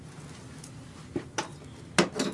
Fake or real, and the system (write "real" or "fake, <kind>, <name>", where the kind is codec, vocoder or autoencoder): real